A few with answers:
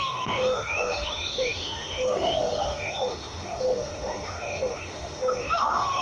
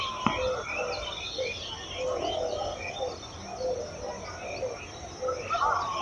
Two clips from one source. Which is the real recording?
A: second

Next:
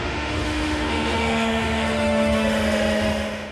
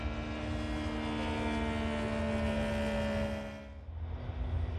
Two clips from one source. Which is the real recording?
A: second